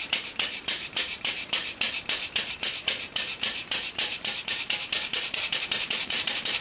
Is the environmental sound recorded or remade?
remade